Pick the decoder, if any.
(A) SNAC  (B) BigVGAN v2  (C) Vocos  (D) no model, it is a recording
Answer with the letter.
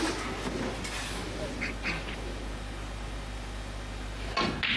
D